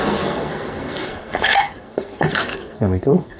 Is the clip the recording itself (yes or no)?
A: no